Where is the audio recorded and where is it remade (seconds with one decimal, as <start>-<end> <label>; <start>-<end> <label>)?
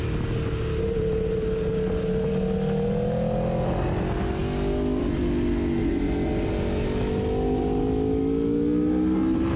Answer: 0.0-9.6 recorded